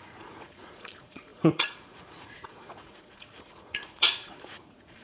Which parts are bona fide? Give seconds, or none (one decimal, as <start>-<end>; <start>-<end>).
none